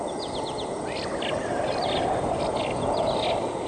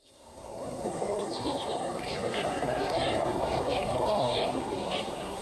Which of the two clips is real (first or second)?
first